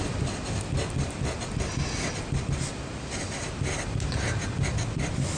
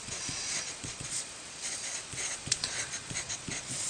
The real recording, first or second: first